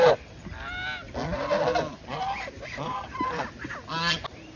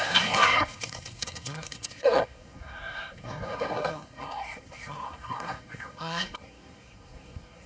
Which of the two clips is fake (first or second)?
second